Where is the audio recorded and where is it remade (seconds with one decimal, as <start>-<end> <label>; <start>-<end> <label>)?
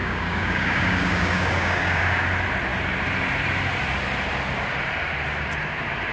0.0-2.2 remade; 2.2-6.1 recorded